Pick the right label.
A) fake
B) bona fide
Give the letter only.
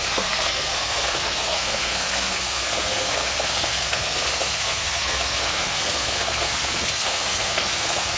A